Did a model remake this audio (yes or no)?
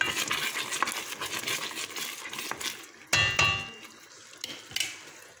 no